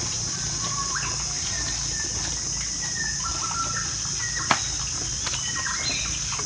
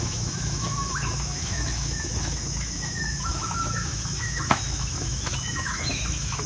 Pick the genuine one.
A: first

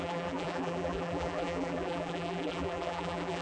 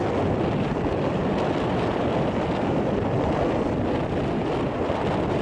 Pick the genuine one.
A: second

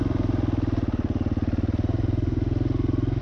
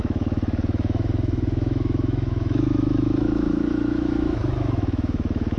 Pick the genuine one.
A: first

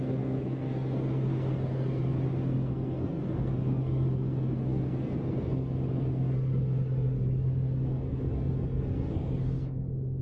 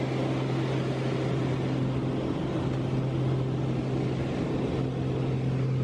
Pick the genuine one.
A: second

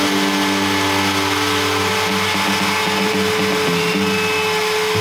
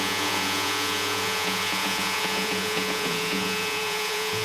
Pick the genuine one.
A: first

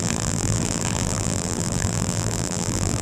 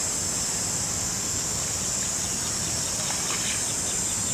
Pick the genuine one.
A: second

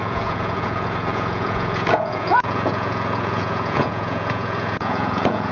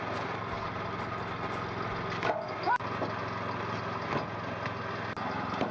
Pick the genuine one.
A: second